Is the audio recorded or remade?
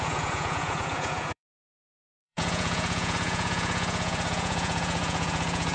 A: remade